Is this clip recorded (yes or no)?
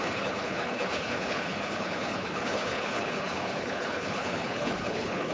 no